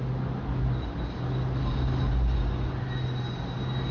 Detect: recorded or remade recorded